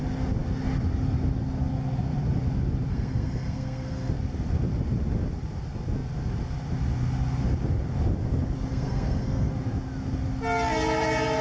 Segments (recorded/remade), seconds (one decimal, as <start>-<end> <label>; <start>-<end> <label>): 0.0-2.9 recorded; 2.9-4.1 remade; 4.1-8.7 recorded; 8.7-9.5 remade; 9.5-11.4 recorded